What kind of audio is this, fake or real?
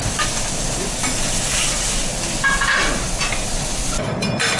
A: real